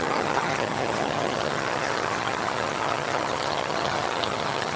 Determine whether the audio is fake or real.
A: fake